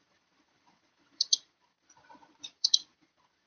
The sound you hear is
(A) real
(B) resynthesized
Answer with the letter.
B